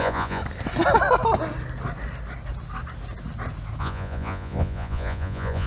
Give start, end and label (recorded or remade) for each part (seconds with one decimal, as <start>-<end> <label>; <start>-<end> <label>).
0.0-0.4 remade; 0.4-3.8 recorded; 3.8-5.7 remade